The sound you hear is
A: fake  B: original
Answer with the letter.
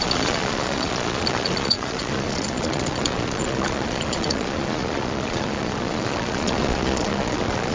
A